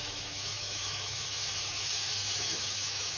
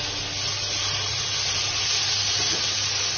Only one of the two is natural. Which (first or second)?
second